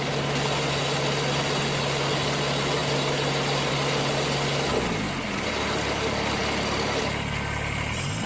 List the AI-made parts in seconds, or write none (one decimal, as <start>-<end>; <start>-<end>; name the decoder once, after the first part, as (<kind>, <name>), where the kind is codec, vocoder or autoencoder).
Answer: none

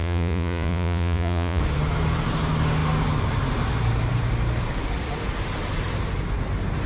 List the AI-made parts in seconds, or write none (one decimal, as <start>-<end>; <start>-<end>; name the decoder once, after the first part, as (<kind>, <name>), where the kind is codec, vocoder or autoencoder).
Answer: 0.0-1.6 (vocoder, Vocos)